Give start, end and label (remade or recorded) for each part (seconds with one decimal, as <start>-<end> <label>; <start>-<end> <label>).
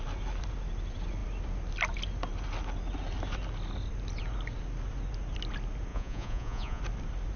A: 0.0-5.9 recorded; 5.9-6.8 remade; 6.8-7.4 recorded